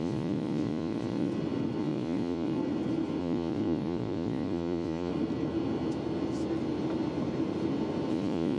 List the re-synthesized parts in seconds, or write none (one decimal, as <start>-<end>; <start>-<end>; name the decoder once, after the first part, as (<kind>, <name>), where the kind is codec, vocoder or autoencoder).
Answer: 0.0-1.3 (vocoder, Vocos); 1.8-2.6; 3.2-5.1; 8.1-8.6